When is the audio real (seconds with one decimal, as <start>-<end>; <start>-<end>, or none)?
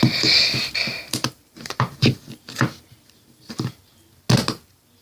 0.0-0.8; 3.8-5.0